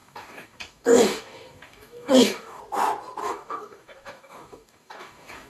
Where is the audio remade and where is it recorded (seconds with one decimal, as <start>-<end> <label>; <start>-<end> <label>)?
0.0-2.6 remade; 2.6-3.2 recorded; 3.2-5.5 remade

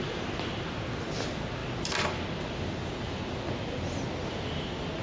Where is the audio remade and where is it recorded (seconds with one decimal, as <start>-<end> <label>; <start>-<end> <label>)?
0.0-5.0 recorded

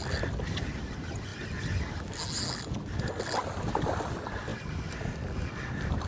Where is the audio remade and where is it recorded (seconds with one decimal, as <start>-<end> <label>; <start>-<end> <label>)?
0.0-4.5 recorded; 4.5-5.5 remade; 5.5-6.1 recorded

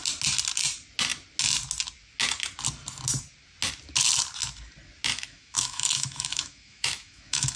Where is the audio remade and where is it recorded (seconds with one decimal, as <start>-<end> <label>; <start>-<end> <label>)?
0.0-5.1 recorded; 5.1-7.6 remade